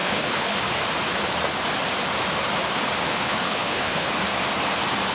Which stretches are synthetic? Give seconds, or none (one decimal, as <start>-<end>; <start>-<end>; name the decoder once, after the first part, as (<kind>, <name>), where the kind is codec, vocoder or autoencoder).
0.0-0.6 (codec, HILCodec); 3.0-4.1